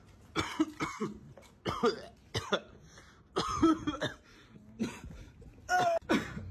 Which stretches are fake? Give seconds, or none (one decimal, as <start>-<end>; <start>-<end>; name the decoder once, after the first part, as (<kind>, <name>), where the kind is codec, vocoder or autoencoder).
0.9-1.5 (vocoder, BigVGAN v2)